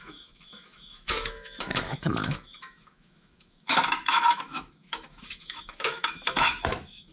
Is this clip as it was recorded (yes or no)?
no